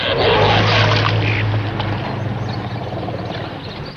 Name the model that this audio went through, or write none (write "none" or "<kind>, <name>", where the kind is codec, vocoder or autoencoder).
none